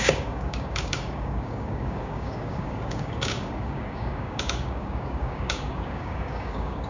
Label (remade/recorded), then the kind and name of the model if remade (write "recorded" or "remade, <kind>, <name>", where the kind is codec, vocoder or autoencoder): remade, codec, DAC